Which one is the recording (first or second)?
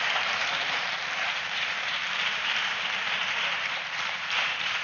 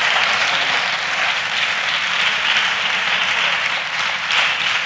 second